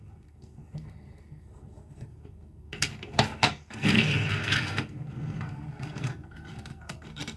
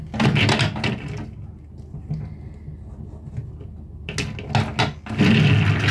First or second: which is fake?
first